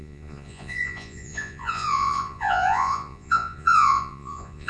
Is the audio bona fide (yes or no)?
no